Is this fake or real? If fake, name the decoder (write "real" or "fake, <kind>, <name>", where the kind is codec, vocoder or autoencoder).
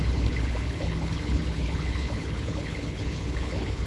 fake, codec, HILCodec